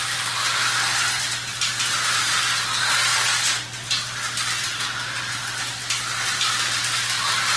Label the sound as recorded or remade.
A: recorded